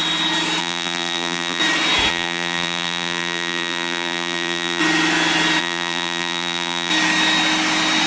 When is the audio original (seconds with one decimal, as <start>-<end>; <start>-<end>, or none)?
0.0-0.6; 1.6-2.1; 4.8-5.6; 6.9-8.1